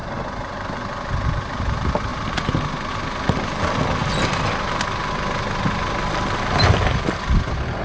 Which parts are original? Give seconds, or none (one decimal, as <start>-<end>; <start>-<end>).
0.0-7.8